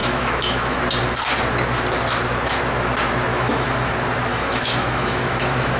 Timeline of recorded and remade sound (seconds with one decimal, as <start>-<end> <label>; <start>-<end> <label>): 0.0-0.8 remade; 0.8-3.3 recorded; 3.3-3.9 remade; 3.9-4.3 recorded; 4.3-5.8 remade